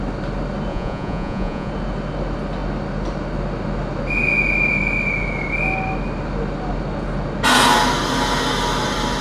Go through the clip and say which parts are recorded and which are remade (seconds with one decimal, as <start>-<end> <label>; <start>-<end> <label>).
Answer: 0.0-0.7 recorded; 0.7-1.7 remade; 1.7-9.2 recorded